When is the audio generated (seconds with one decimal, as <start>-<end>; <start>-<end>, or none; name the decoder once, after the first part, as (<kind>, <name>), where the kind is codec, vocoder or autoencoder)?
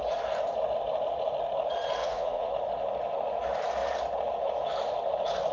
2.0-2.5 (vocoder, Vocos)